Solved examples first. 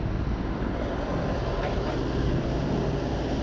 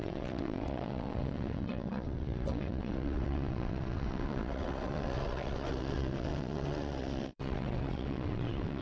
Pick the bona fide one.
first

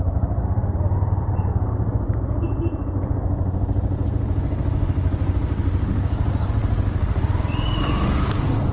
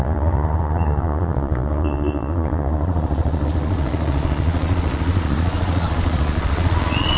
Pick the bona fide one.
first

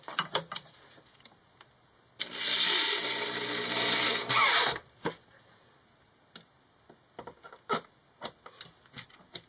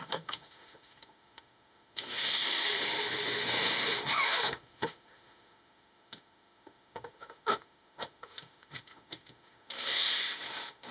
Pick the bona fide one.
first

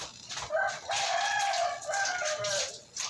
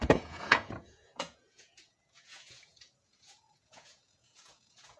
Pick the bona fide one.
first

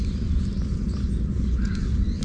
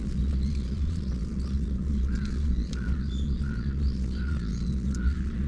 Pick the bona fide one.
first